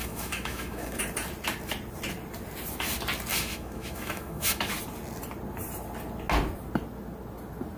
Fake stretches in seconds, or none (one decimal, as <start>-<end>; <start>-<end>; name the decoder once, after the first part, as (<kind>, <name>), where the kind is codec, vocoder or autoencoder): 0.0-1.0 (autoencoder, DAC-VAE); 3.3-4.7